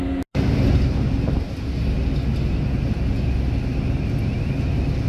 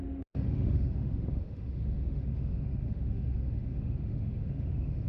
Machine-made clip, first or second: second